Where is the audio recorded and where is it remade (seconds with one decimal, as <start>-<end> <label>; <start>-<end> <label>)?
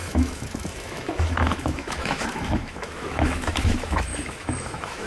0.0-5.1 remade